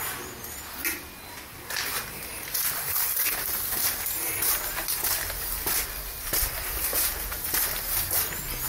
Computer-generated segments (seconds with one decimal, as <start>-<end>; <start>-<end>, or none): 6.9-7.5

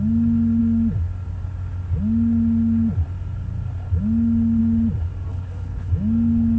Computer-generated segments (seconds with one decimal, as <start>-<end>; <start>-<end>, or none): 5.3-5.9

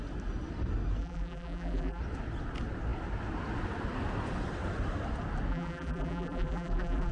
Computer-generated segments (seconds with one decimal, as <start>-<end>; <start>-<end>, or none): 1.0-2.0; 5.5-7.1

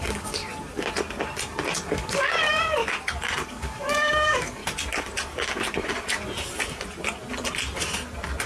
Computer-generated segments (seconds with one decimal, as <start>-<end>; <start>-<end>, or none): 0.0-0.4; 1.9-2.8; 3.5-4.6